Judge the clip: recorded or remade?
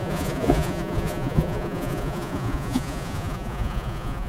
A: remade